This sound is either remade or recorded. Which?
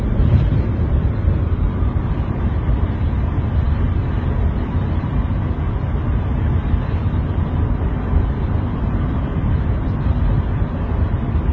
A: remade